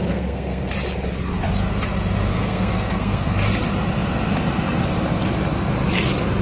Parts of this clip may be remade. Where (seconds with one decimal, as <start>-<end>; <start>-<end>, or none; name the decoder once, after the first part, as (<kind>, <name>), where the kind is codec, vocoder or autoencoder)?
0.0-0.7 (codec, SNAC); 2.3-3.3